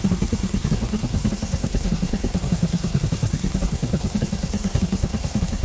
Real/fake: fake